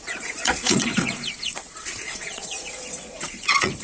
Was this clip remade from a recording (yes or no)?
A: yes